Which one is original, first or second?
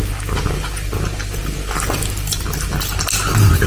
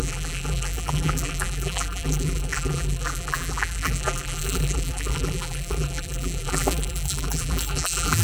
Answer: first